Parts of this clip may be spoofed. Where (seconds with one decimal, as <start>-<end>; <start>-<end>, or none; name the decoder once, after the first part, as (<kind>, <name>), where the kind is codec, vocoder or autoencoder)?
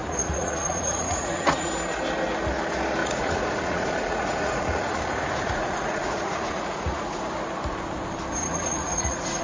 0.0-1.7 (vocoder, Vocos); 3.0-7.2; 8.4-9.4